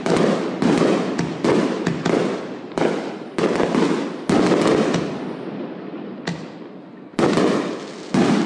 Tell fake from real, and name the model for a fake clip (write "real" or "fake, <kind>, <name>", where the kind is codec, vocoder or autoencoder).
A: real